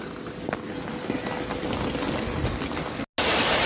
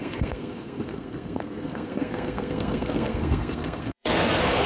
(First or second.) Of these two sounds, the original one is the first